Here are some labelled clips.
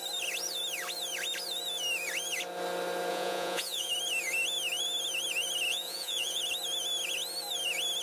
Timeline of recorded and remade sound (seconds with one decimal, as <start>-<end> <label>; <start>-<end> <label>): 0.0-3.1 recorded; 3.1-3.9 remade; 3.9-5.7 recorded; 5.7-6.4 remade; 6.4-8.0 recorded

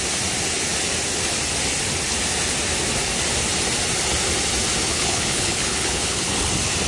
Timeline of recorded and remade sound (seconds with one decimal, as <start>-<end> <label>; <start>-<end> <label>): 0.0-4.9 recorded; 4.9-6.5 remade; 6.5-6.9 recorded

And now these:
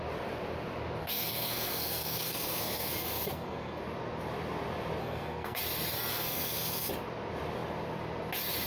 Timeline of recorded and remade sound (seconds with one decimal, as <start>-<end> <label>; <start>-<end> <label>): 0.0-1.0 recorded; 1.0-3.8 remade; 3.8-5.0 recorded; 5.0-5.6 remade; 5.6-6.1 recorded; 6.1-6.9 remade; 6.9-8.7 recorded

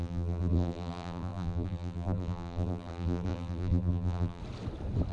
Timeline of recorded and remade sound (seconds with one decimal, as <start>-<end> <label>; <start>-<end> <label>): 0.0-4.4 remade; 4.4-5.1 recorded

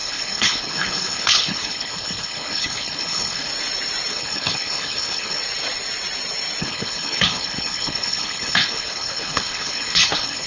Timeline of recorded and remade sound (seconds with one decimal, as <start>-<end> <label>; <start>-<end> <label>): 0.0-3.5 remade; 3.5-4.1 recorded; 4.1-5.4 remade; 5.4-6.6 recorded; 6.6-10.5 remade